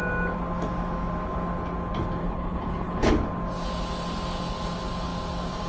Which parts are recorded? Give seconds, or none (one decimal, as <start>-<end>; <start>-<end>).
0.0-2.2; 3.1-5.7